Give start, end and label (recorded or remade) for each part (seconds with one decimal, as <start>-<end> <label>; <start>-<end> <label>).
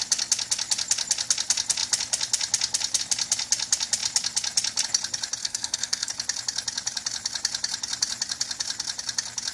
0.0-5.4 recorded; 5.4-6.1 remade; 6.1-9.5 recorded